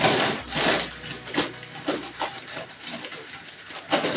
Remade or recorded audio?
remade